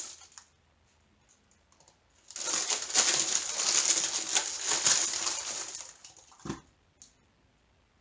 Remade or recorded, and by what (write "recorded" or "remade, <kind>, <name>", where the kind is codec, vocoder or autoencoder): recorded